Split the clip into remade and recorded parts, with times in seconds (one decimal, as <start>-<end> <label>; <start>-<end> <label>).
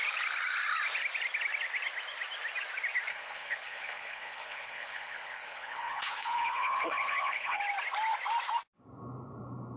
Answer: 0.0-3.1 recorded; 3.1-7.6 remade; 7.6-9.8 recorded